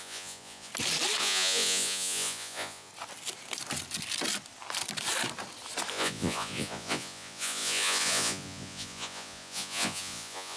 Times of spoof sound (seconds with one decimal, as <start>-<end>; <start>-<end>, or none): 0.0-0.7; 1.2-2.9; 5.9-10.6